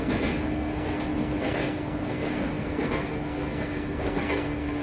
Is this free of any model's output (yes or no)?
no